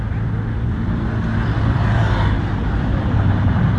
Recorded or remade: remade